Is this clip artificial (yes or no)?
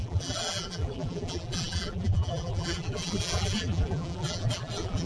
yes